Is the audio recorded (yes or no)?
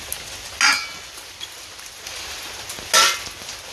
yes